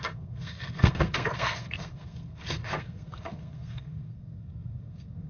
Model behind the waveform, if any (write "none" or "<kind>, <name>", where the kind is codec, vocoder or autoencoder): codec, SNAC